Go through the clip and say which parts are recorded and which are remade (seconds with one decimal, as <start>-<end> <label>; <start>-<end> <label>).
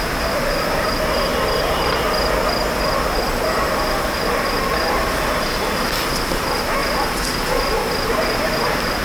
0.0-9.0 recorded